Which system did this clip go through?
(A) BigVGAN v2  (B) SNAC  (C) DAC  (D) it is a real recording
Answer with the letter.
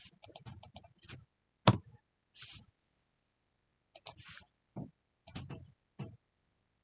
D